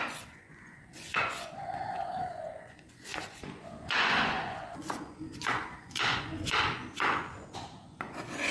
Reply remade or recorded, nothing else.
remade